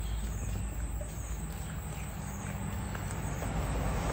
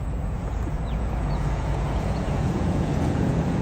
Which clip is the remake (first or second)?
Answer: second